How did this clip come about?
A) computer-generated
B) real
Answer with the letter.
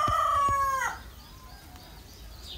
B